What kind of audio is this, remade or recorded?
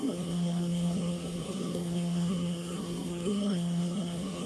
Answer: remade